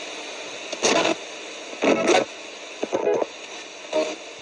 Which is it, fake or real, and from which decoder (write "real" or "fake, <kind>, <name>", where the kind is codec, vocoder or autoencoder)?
real